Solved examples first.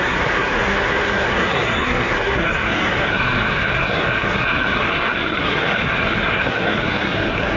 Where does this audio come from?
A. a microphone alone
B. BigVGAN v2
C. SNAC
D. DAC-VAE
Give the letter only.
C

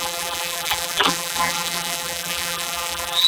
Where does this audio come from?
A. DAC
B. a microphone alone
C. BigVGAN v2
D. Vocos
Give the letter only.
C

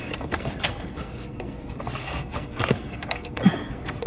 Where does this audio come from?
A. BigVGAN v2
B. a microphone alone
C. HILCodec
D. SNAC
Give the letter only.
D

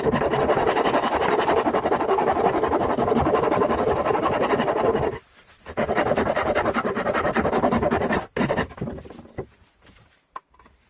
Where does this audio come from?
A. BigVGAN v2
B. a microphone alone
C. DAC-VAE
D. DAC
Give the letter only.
A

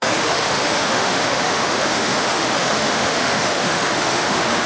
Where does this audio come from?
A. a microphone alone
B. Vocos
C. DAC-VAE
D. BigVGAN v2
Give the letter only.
C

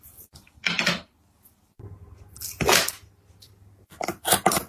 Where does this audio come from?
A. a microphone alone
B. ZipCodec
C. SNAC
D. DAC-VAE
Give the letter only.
A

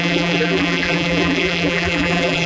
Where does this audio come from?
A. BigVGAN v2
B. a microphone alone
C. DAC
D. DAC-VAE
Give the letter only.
A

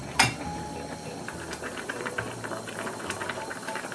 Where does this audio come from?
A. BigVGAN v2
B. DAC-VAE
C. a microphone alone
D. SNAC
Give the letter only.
A